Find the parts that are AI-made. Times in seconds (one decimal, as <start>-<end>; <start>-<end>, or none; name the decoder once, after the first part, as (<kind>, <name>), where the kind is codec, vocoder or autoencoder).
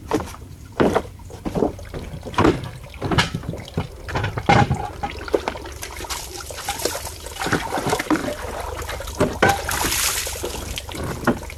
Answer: 0.0-8.2 (vocoder, BigVGAN v2)